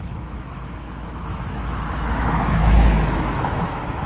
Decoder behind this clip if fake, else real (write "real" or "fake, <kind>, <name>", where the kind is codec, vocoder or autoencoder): fake, autoencoder, DAC-VAE